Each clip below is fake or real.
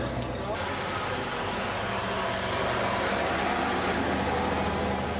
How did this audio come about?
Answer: real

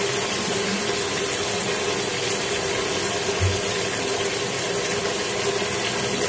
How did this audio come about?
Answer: real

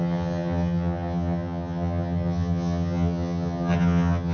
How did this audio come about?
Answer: fake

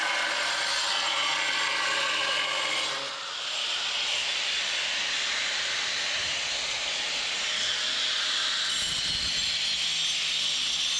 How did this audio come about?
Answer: real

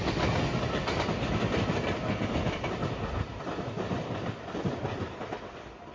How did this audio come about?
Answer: real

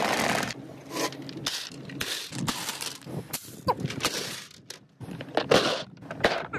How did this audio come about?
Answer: real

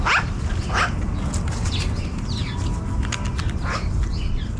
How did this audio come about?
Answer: real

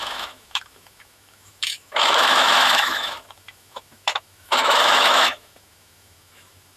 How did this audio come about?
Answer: fake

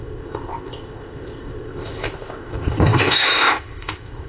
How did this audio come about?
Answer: fake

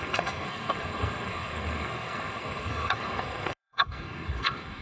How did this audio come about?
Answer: fake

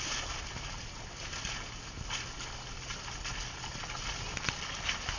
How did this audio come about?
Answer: real